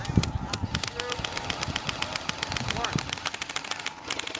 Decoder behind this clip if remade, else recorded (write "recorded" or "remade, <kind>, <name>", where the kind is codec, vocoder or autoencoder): recorded